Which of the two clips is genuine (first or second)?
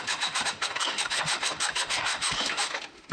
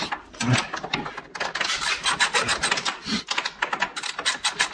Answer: second